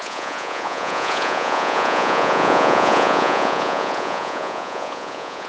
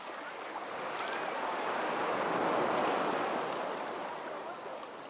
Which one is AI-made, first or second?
first